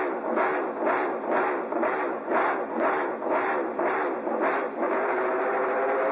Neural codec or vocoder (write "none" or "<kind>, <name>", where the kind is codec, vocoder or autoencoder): none